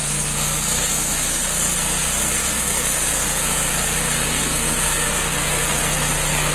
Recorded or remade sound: remade